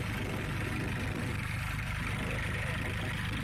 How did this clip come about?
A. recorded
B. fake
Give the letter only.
A